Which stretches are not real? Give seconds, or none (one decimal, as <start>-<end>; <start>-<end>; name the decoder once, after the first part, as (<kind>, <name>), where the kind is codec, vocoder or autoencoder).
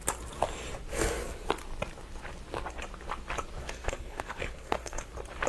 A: 0.9-1.5 (codec, SNAC); 3.6-5.1